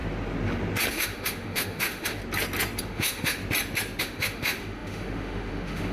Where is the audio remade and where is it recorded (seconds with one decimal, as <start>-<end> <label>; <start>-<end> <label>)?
0.0-0.9 recorded; 0.9-2.2 remade; 2.2-2.8 recorded; 2.8-3.4 remade; 3.4-4.0 recorded; 4.0-5.9 remade